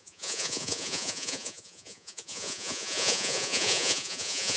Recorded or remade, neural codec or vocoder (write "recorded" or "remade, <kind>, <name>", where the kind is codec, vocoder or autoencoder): remade, vocoder, Vocos